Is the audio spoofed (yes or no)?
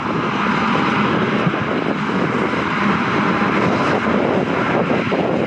no